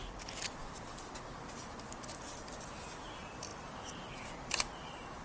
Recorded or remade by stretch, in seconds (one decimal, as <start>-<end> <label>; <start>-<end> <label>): 0.0-5.2 recorded